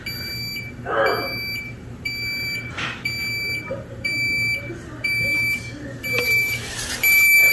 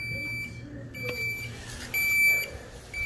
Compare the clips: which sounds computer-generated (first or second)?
first